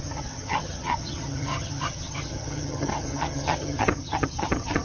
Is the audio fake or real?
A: fake